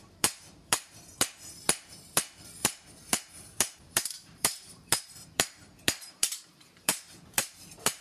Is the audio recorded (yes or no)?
no